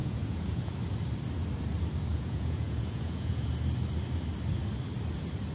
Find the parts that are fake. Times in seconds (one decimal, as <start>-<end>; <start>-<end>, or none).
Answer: 0.0-0.7; 2.1-3.5